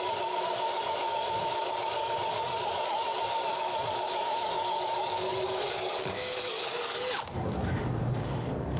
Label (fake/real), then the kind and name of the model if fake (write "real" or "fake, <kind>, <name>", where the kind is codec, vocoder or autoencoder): fake, codec, DAC